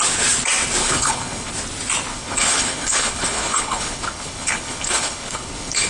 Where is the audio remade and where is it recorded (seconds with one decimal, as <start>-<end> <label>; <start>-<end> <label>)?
0.0-0.8 recorded; 0.8-1.5 remade; 1.5-2.1 recorded; 2.1-5.9 remade